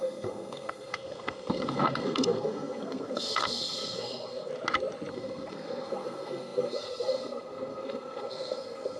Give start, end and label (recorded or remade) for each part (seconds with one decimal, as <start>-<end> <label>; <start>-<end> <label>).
0.0-4.5 remade; 4.5-5.1 recorded; 5.1-9.0 remade